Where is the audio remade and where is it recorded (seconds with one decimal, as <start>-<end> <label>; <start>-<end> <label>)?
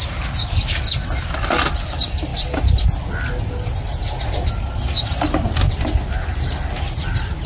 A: 0.0-7.5 recorded